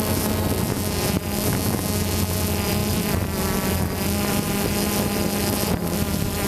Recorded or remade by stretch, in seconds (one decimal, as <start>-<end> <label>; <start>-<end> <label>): 0.0-6.5 recorded